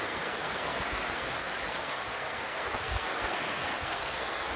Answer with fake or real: fake